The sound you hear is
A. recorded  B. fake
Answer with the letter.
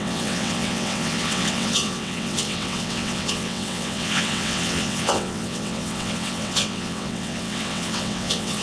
B